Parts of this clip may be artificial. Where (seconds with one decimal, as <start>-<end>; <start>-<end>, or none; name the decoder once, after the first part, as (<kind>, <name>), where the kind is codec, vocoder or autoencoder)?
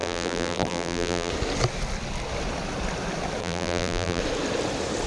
0.0-1.3 (vocoder, BigVGAN v2); 3.4-4.2